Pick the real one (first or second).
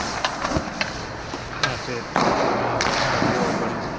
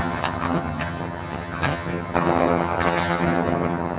first